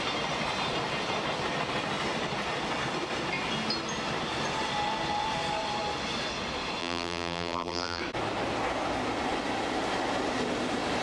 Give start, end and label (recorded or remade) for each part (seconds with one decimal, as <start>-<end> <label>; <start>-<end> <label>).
0.0-6.8 recorded; 6.8-8.0 remade; 8.0-11.0 recorded